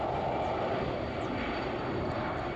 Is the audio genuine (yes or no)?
no